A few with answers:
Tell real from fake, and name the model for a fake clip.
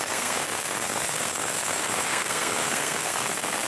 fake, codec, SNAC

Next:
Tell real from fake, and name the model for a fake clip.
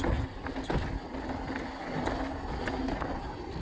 real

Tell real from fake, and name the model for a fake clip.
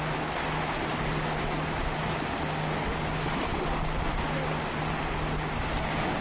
real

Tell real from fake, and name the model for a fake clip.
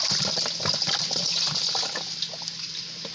real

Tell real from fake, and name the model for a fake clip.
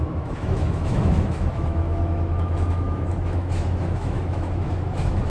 fake, autoencoder, DAC-VAE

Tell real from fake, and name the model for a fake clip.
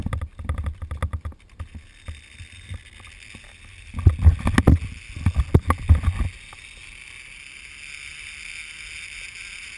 real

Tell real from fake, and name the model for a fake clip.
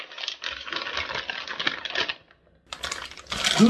real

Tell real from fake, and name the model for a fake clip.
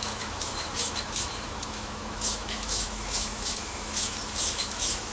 fake, autoencoder, DAC-VAE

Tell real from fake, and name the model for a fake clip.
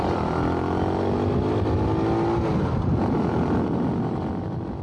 real